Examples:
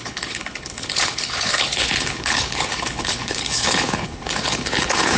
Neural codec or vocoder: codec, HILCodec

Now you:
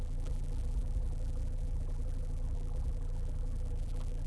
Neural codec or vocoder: vocoder, BigVGAN v2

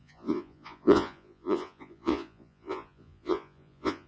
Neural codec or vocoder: vocoder, Vocos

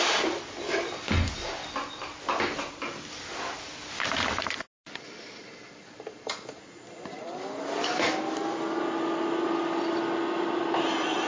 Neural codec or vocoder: none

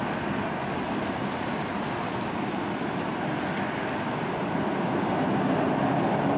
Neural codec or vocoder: none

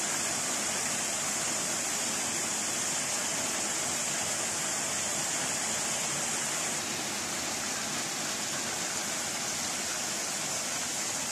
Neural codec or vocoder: none